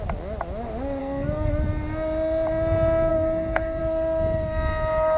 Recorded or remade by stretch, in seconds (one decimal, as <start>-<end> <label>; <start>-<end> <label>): 0.0-1.0 recorded; 1.0-1.5 remade; 1.5-3.1 recorded; 3.1-3.8 remade; 3.8-5.2 recorded